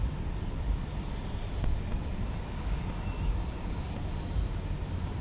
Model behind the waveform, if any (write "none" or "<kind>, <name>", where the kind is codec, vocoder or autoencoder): none